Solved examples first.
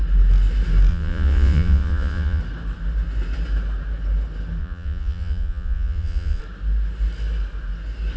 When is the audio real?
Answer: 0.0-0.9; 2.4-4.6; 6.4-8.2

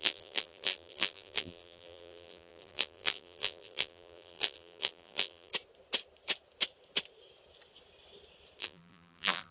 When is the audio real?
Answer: 5.5-8.6